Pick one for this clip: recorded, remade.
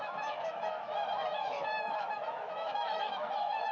remade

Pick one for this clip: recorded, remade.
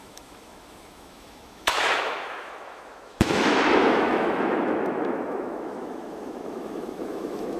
remade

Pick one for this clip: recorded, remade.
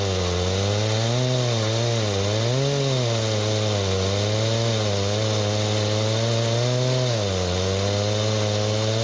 recorded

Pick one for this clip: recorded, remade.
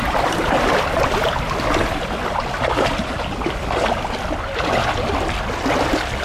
recorded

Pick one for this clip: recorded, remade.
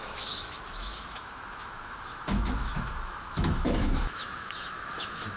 remade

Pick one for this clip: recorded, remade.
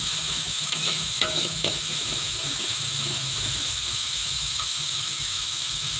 remade